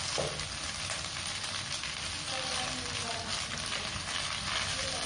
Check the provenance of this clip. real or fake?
real